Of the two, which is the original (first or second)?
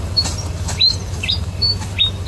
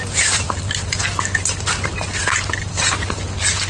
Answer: second